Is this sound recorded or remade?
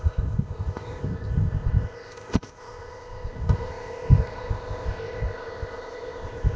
remade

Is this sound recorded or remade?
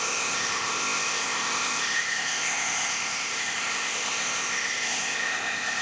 remade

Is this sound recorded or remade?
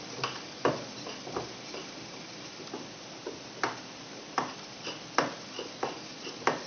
recorded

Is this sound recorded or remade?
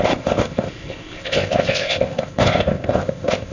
remade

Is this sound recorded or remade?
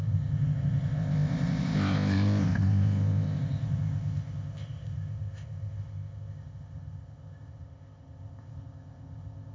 remade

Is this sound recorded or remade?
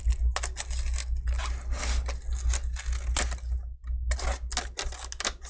recorded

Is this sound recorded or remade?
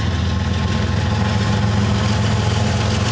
recorded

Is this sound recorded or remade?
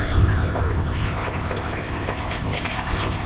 remade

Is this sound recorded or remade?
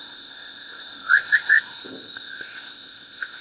remade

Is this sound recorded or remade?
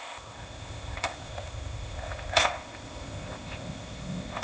remade